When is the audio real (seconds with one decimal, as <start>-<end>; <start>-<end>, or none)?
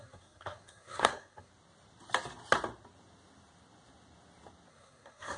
1.5-4.7